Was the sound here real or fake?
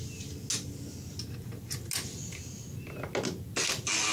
real